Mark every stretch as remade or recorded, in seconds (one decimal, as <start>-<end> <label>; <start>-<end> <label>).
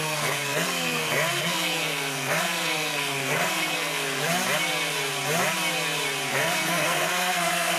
0.0-4.3 remade; 4.3-6.3 recorded; 6.3-7.8 remade